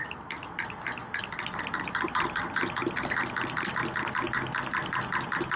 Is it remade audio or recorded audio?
recorded